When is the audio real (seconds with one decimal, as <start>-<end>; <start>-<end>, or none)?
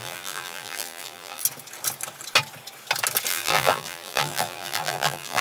1.4-3.3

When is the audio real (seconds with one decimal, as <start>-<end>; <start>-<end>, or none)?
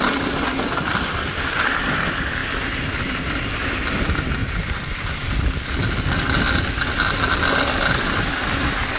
0.0-4.4; 5.4-9.0